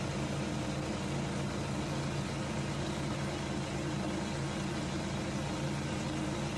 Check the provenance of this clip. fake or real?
real